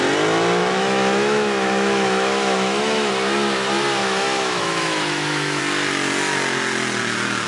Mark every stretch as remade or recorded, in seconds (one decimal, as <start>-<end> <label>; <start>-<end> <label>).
0.0-0.6 recorded; 0.6-3.1 remade; 3.1-4.0 recorded; 4.0-5.6 remade; 5.6-7.5 recorded